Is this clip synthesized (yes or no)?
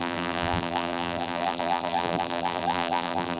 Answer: yes